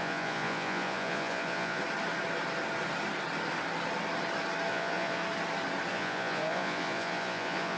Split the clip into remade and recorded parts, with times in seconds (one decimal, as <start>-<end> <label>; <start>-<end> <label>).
0.0-1.8 remade; 1.8-4.7 recorded; 4.7-5.2 remade; 5.2-5.9 recorded; 5.9-7.8 remade